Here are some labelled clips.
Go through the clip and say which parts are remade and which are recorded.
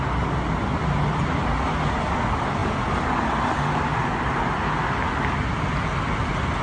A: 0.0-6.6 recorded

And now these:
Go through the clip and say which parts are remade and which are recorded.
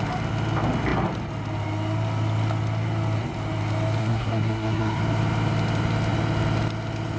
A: 0.0-4.0 recorded; 4.0-5.0 remade; 5.0-7.2 recorded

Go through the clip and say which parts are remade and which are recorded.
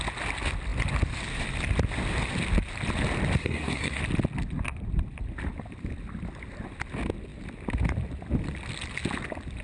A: 0.0-3.4 recorded; 3.4-4.0 remade; 4.0-9.6 recorded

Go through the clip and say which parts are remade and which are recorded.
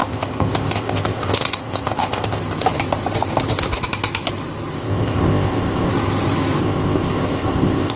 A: 0.0-2.4 remade; 2.4-4.8 recorded; 4.8-5.9 remade; 5.9-6.6 recorded; 6.6-8.0 remade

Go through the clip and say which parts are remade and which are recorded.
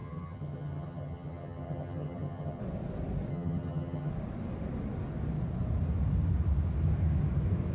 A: 0.0-2.6 remade; 2.6-3.3 recorded; 3.3-4.1 remade; 4.1-7.7 recorded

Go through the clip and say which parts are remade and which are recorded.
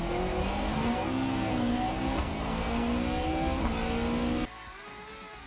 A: 0.0-0.4 recorded; 0.4-3.7 remade; 3.7-5.5 recorded